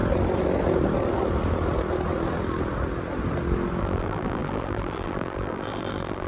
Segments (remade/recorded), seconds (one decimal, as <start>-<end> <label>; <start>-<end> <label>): 0.0-3.8 recorded; 3.8-6.3 remade